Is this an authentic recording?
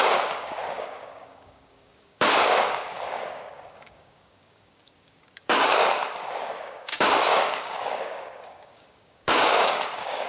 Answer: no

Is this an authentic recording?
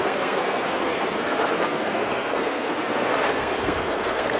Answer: no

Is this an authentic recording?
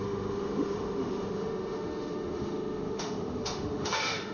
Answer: no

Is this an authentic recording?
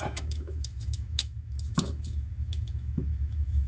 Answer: no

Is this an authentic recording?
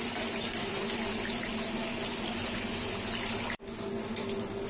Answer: yes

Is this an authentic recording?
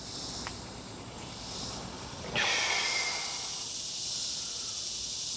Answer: yes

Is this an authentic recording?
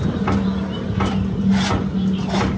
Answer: yes